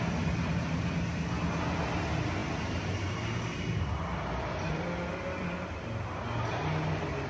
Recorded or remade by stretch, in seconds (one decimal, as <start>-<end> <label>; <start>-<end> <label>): 0.0-7.3 recorded